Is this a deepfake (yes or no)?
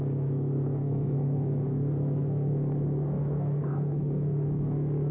yes